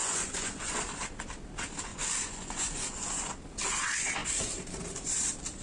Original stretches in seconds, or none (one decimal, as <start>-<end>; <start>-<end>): 0.8-1.9; 3.3-5.6